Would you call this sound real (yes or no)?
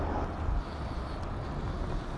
yes